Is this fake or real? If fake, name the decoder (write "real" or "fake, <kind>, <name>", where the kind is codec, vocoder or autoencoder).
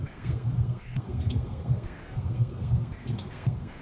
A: fake, codec, SNAC